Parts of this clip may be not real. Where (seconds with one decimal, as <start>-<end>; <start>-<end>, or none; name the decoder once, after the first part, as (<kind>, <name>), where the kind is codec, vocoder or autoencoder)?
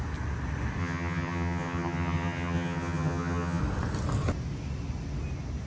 0.8-3.6 (vocoder, HiFi-GAN)